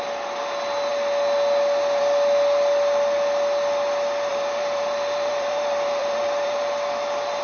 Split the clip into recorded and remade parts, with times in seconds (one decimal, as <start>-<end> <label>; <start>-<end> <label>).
0.0-4.3 recorded; 4.3-6.6 remade; 6.6-7.4 recorded